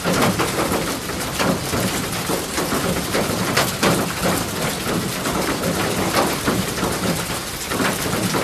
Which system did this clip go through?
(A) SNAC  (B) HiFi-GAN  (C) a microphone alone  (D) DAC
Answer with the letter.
C